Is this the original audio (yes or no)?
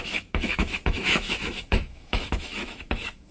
no